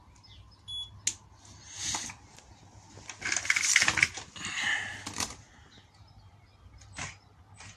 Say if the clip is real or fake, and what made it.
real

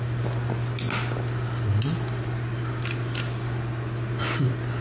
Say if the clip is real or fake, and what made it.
real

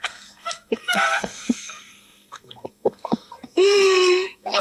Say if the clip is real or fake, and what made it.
fake, codec, SNAC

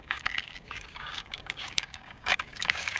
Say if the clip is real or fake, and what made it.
fake, codec, DAC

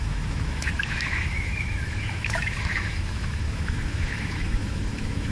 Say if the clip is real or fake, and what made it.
fake, autoencoder, DAC-VAE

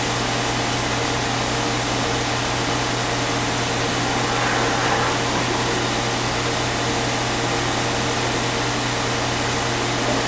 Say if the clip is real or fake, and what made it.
real